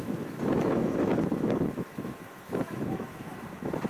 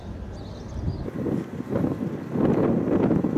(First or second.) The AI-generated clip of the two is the first